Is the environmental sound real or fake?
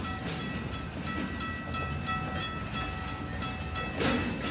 real